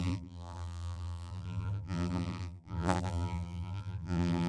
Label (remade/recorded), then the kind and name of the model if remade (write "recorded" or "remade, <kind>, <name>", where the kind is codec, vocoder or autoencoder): remade, vocoder, BigVGAN v2